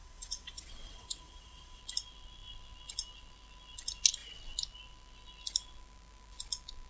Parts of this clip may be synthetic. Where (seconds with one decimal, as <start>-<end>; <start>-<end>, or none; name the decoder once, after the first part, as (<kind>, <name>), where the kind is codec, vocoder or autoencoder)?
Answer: 0.0-1.8 (vocoder, WaveNeXt)